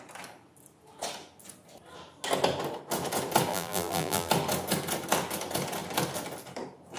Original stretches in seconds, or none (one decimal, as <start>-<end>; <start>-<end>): 0.0-3.5; 4.3-7.0